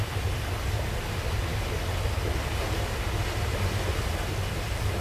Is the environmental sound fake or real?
real